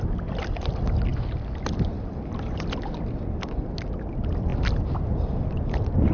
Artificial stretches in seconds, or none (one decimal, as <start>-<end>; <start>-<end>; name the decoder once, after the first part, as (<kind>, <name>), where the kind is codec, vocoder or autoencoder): none